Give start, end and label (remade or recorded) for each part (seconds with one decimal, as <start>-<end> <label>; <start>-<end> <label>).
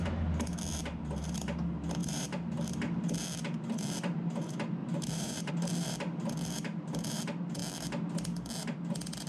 0.0-2.0 recorded; 2.0-2.7 remade; 2.7-4.8 recorded; 4.8-5.5 remade; 5.5-9.3 recorded